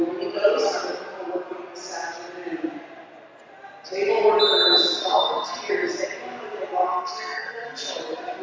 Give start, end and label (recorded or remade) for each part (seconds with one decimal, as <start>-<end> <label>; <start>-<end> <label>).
0.0-5.0 recorded; 5.0-5.7 remade; 5.7-6.9 recorded; 6.9-8.0 remade; 8.0-8.4 recorded